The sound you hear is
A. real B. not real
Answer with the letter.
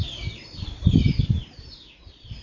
A